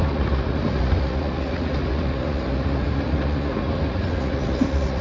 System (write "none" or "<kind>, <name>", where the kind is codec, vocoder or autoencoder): vocoder, Vocos